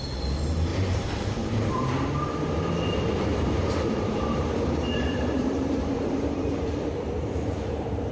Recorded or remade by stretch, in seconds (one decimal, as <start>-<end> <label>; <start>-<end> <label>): 0.0-0.7 recorded; 0.7-1.9 remade; 1.9-3.3 recorded; 3.3-8.1 remade